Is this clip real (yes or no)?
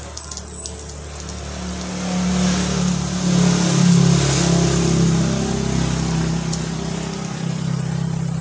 yes